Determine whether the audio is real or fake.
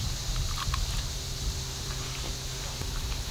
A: real